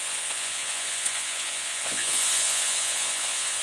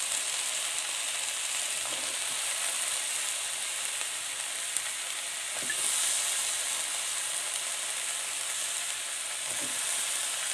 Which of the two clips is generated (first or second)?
first